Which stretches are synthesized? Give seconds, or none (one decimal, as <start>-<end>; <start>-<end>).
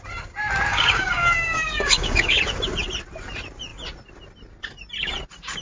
0.7-2.4